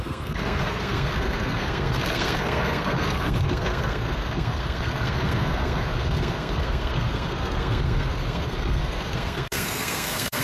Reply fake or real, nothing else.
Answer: fake